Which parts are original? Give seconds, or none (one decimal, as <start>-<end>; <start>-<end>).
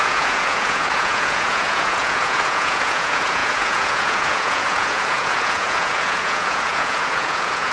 none